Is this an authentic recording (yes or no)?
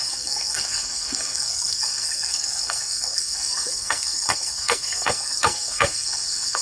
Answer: no